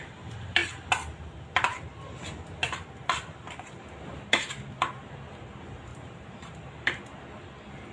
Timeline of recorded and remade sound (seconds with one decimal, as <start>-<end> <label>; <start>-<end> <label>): 0.0-5.9 recorded; 5.9-7.0 remade; 7.0-7.9 recorded